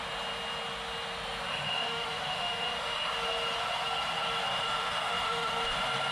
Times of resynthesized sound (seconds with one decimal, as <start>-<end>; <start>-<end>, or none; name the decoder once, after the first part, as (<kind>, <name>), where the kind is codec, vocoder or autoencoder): 1.5-3.1 (autoencoder, DAC-VAE); 4.5-5.6